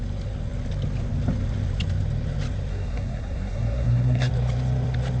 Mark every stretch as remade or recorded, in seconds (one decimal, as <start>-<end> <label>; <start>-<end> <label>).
0.0-2.7 recorded; 2.7-4.3 remade; 4.3-5.2 recorded